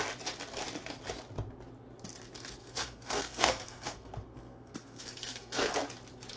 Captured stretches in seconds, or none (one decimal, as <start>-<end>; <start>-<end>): 0.0-2.6; 5.7-6.4

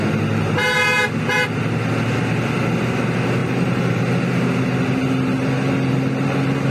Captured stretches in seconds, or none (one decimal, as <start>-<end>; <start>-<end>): 0.0-3.4; 4.0-6.7